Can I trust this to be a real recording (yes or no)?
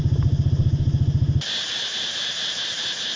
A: yes